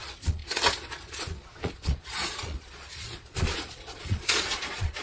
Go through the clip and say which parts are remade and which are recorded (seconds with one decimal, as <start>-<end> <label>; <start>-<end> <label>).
0.0-5.0 remade